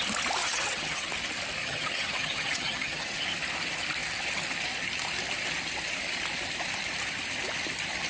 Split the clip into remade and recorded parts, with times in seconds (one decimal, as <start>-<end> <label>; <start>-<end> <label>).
0.0-0.4 recorded; 0.4-1.1 remade; 1.1-1.6 recorded; 1.6-3.2 remade; 3.2-8.1 recorded